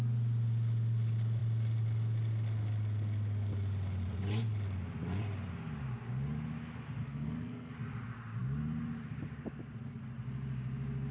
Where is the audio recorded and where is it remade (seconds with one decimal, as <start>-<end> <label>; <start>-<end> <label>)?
0.0-7.0 recorded; 7.0-7.7 remade; 7.7-11.1 recorded